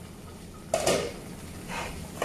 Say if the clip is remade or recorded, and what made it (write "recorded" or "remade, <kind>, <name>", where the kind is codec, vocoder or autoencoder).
recorded